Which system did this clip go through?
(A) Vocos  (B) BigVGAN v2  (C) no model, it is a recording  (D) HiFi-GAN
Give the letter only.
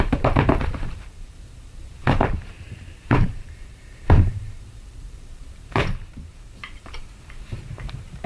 B